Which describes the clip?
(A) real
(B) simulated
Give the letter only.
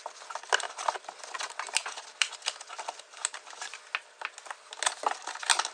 A